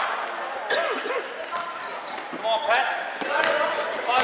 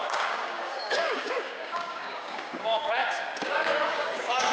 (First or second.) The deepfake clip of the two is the second